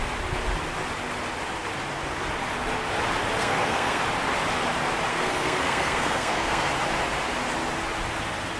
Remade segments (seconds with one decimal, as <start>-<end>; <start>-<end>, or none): 3.4-4.0; 5.1-6.7

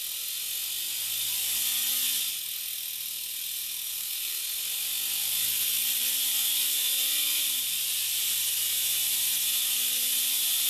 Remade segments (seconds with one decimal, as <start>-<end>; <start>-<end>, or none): 3.9-4.4

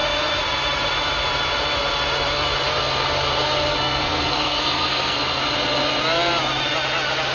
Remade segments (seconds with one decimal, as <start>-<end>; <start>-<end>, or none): 3.7-5.4

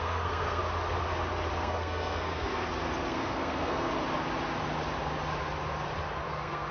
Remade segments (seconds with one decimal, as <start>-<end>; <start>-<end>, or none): 0.0-0.6; 1.6-2.6; 3.1-3.9; 6.3-6.7

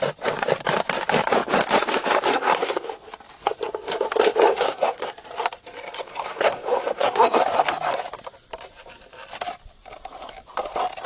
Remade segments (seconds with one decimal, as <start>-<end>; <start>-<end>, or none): 2.3-2.9; 4.5-5.1; 6.0-7.4

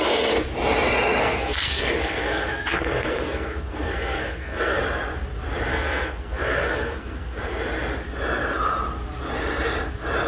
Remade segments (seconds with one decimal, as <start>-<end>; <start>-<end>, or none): 1.2-4.8; 5.7-7.6

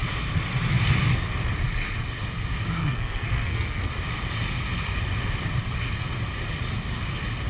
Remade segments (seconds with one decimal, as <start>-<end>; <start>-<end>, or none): 2.8-3.9

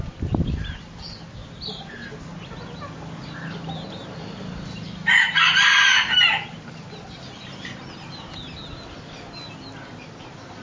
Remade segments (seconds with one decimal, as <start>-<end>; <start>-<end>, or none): none